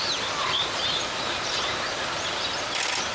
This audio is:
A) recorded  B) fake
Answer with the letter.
A